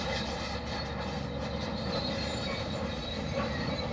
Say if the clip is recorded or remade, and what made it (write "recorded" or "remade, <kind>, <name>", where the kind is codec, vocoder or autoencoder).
recorded